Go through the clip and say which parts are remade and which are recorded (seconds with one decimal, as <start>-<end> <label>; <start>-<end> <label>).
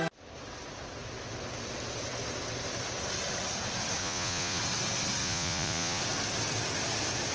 0.0-4.0 recorded; 4.0-4.6 remade; 4.6-5.2 recorded; 5.2-6.0 remade; 6.0-7.3 recorded